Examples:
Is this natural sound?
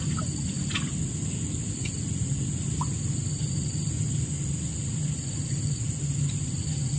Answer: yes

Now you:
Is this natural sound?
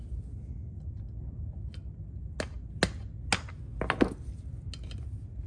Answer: yes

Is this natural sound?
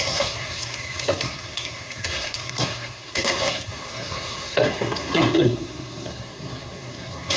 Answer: no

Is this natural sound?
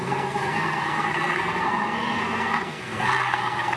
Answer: no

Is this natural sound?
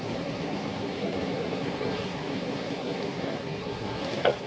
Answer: no